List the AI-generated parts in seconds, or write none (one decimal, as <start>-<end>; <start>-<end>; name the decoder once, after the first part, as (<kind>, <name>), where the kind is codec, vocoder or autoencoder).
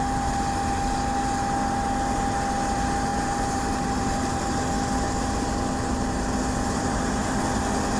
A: 3.1-4.4 (vocoder, BigVGAN v2)